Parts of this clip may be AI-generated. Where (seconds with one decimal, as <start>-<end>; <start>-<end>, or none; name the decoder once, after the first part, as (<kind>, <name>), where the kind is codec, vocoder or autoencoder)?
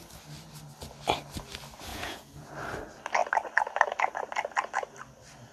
1.9-2.5 (vocoder, Vocos)